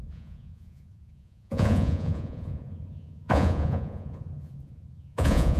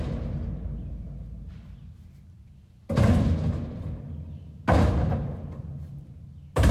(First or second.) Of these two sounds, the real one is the second